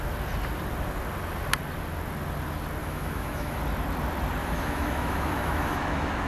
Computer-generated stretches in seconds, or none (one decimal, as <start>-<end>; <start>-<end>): 2.8-3.6; 4.4-6.3